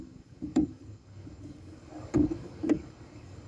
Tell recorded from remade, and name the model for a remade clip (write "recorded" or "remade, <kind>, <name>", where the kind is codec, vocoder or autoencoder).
remade, codec, DAC